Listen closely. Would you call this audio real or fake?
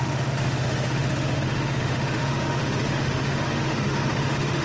fake